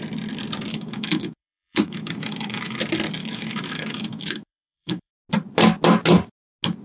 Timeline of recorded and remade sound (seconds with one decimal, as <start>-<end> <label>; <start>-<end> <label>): 0.0-0.7 recorded; 0.7-2.8 remade; 2.8-3.2 recorded; 3.2-5.1 remade; 5.1-6.8 recorded